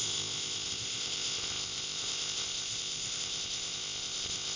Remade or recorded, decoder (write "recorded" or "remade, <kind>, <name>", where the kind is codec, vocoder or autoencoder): remade, codec, ZipCodec